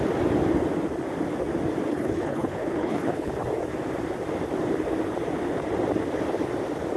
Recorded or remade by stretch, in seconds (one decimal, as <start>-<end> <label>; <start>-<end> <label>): 0.0-1.9 recorded; 1.9-3.3 remade; 3.3-7.0 recorded